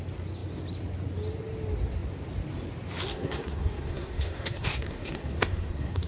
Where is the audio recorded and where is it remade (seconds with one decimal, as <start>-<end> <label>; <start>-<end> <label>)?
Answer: 0.0-3.1 recorded; 3.1-6.1 remade